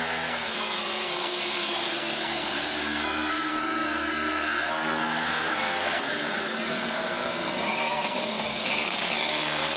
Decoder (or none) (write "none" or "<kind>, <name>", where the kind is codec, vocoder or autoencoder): codec, SNAC